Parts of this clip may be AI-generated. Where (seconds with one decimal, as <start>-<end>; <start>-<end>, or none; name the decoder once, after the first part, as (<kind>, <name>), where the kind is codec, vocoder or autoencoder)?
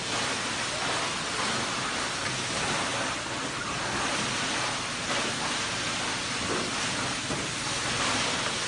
none